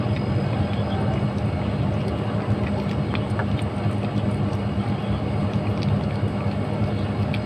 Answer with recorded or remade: recorded